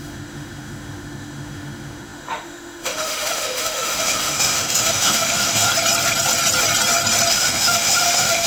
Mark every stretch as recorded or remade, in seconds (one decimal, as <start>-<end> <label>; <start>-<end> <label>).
0.0-5.7 remade; 5.7-7.3 recorded; 7.3-8.5 remade